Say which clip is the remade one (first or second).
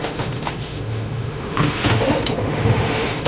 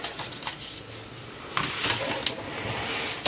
first